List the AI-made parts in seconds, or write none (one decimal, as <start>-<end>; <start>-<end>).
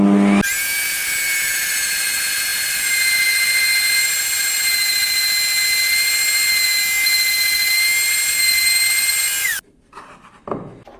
none